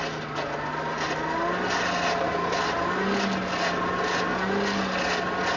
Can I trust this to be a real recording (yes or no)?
yes